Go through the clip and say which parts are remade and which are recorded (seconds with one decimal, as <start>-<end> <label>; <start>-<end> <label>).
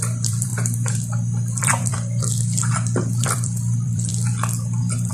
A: 0.0-4.1 remade; 4.1-5.1 recorded